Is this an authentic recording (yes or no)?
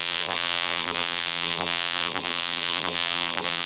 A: no